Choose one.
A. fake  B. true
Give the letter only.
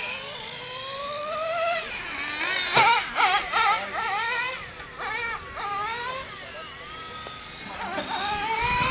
B